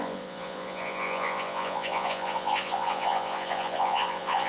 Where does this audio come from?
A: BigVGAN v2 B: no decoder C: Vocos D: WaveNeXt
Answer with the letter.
C